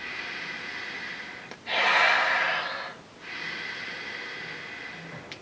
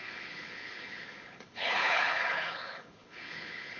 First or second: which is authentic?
first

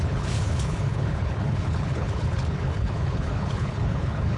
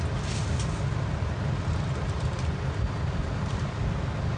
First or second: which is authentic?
second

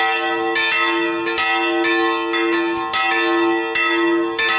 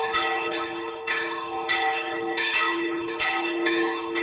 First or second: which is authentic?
first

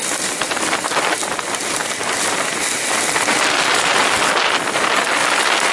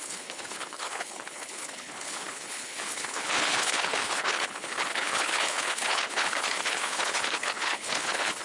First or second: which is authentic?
first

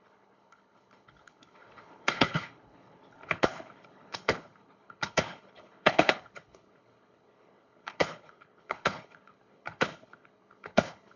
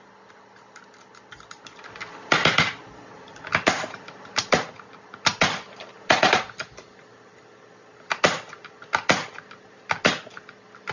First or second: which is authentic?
second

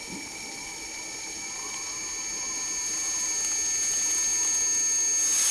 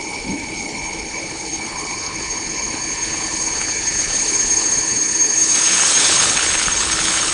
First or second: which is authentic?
first